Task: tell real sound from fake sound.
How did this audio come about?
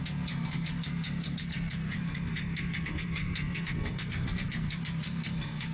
fake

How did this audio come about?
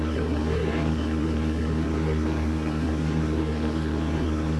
fake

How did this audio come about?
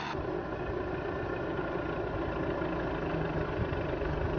real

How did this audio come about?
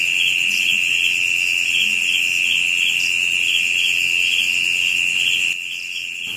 real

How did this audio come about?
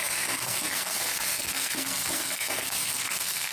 fake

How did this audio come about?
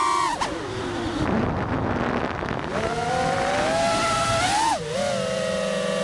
real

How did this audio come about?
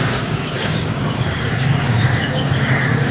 fake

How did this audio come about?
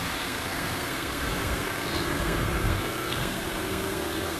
fake